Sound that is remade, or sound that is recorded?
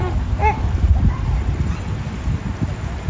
remade